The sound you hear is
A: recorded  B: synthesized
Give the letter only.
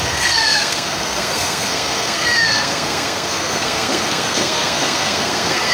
B